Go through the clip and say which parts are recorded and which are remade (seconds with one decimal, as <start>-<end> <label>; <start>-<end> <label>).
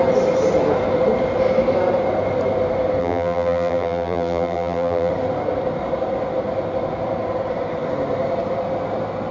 0.0-3.0 recorded; 3.0-5.1 remade; 5.1-9.3 recorded